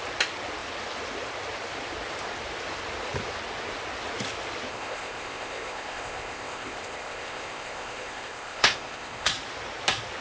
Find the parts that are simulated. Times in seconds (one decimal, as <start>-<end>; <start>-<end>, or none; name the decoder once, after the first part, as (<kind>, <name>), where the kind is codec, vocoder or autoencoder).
4.7-9.3 (codec, ZipCodec)

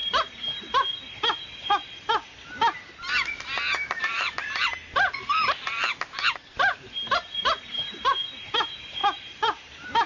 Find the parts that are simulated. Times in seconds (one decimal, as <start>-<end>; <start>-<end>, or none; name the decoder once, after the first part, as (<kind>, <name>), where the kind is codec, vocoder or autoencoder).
4.0-4.7 (vocoder, BigVGAN v2); 7.6-10.1

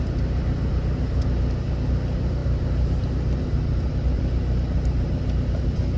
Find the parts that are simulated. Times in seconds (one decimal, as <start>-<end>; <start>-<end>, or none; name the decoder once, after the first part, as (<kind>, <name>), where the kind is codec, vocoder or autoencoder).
none